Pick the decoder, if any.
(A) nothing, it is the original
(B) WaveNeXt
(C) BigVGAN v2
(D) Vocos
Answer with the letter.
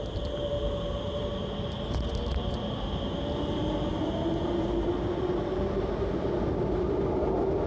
A